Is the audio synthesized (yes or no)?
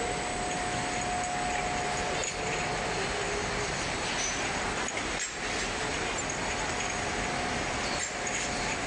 no